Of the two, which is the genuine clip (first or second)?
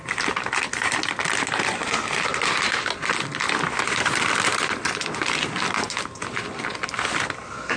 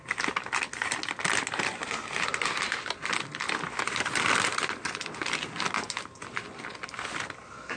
second